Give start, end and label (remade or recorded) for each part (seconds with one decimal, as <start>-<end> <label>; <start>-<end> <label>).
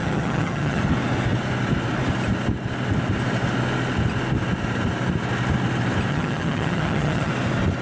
0.0-0.8 remade; 0.8-6.1 recorded; 6.1-7.3 remade; 7.3-7.8 recorded